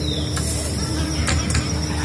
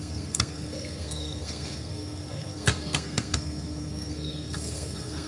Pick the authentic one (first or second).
first